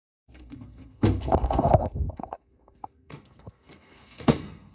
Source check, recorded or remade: remade